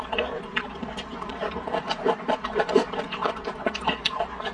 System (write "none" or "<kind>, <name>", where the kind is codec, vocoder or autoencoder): vocoder, BigVGAN v2